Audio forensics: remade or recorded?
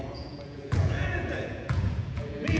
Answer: remade